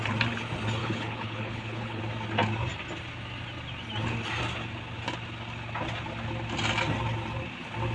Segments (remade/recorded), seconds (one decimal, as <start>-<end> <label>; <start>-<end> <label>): 0.0-0.8 recorded; 0.8-2.0 remade; 2.0-7.9 recorded